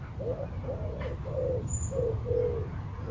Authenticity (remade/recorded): recorded